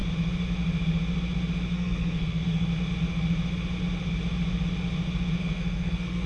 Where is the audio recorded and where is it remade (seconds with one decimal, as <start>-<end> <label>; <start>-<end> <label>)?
0.0-1.7 recorded; 1.7-2.7 remade; 2.7-5.4 recorded; 5.4-6.3 remade